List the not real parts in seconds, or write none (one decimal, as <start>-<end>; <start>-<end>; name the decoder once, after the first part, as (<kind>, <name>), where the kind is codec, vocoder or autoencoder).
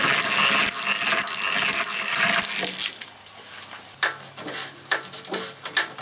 none